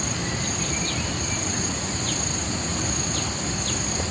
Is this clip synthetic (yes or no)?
no